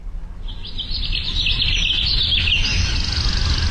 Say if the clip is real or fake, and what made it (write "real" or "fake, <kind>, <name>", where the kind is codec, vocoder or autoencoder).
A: real